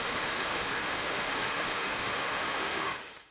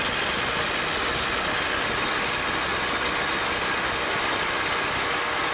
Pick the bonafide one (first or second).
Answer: second